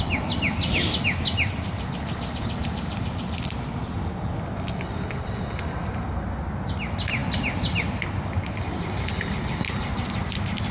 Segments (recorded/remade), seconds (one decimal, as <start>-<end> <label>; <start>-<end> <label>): 0.0-10.7 recorded